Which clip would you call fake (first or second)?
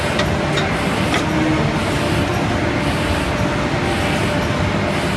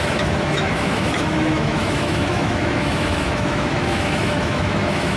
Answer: second